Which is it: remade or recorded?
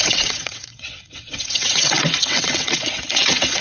remade